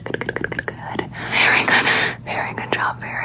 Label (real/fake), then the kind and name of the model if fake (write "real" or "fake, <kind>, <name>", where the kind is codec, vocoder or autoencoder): fake, vocoder, BigVGAN v2